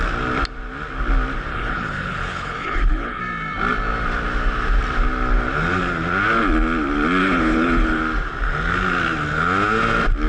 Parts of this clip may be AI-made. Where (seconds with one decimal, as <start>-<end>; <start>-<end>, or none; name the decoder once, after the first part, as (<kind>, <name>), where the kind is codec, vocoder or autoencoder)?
1.5-3.2 (codec, HILCodec); 7.2-8.0